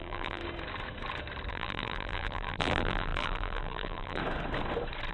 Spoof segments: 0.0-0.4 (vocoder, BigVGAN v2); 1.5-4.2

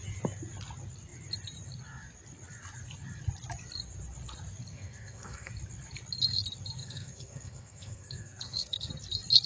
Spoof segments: 4.7-5.5 (codec, SNAC); 6.8-8.9